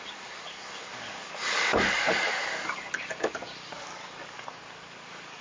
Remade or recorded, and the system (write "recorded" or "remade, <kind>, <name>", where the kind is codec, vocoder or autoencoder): remade, codec, DAC